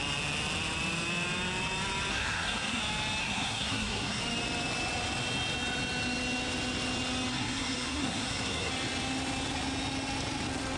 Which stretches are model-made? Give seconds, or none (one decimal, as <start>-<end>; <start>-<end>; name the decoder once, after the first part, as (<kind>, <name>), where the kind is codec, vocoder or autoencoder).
2.1-2.8 (codec, SNAC); 3.2-4.2; 7.3-8.7